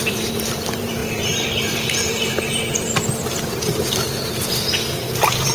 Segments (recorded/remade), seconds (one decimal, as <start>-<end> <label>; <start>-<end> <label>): 0.0-5.5 remade